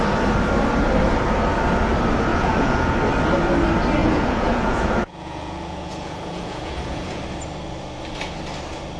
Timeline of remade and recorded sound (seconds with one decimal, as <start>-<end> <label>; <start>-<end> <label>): 0.0-2.3 recorded; 2.3-2.9 remade; 2.9-4.0 recorded; 4.0-7.2 remade; 7.2-9.0 recorded